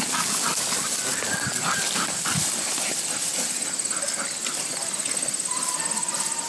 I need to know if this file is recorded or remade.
recorded